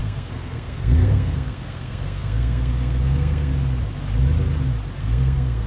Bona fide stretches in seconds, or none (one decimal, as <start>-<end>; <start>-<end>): 3.5-5.0

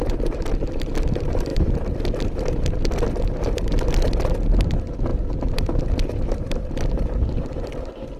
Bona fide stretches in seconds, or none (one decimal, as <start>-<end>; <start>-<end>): 0.0-8.2